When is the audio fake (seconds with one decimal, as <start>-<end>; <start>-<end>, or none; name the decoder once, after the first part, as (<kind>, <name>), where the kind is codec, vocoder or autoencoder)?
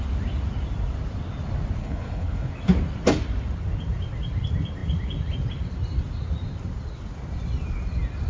1.8-2.5 (codec, HILCodec)